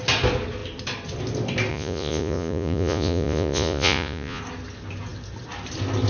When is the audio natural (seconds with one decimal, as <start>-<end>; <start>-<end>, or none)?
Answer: 0.0-1.7; 4.4-6.1